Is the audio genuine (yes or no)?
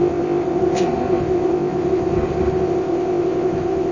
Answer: no